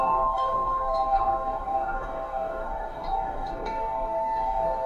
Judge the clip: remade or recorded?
remade